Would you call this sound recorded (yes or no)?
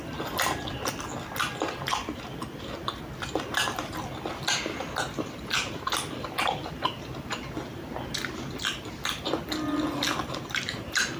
yes